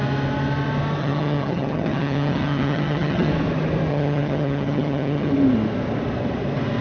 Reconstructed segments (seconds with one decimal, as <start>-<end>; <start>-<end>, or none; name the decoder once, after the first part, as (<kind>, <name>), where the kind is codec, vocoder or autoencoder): 1.0-3.3 (vocoder, HiFi-GAN); 3.9-5.3